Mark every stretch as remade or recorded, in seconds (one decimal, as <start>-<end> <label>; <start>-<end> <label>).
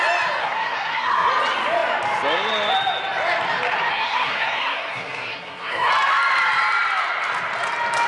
0.0-0.4 recorded; 0.4-1.3 remade; 1.3-3.9 recorded; 3.9-5.9 remade; 5.9-8.1 recorded